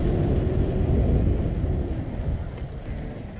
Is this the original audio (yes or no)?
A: yes